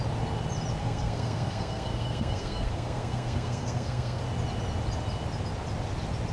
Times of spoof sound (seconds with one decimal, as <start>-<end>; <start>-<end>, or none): 0.8-4.2